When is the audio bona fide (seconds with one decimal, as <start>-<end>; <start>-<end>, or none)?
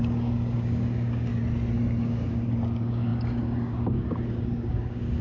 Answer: 1.3-2.0